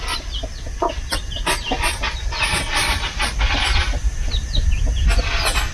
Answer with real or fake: real